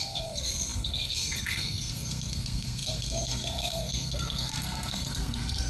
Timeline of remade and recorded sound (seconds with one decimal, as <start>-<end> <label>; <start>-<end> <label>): 0.0-5.7 remade